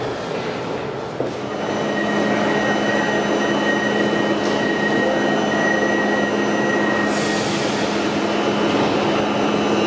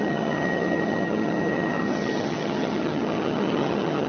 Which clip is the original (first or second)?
first